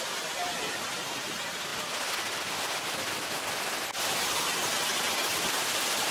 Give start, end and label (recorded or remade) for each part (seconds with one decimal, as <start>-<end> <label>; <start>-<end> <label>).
0.0-6.1 recorded